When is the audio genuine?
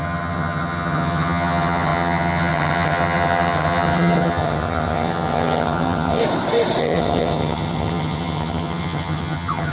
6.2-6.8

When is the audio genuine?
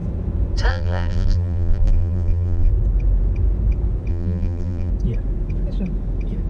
0.0-0.7; 2.7-4.1; 4.9-6.5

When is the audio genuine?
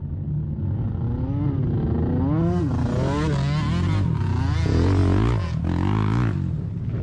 0.0-7.0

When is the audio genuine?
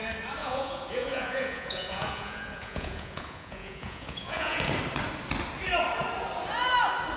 0.0-0.4; 4.7-7.2